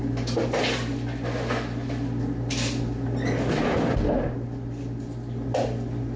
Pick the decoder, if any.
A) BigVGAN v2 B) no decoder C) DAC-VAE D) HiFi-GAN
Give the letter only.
B